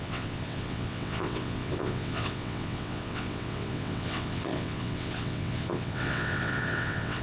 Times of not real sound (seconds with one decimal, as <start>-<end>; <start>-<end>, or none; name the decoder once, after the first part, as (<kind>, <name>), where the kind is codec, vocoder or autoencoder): 0.0-7.2 (vocoder, WaveNeXt)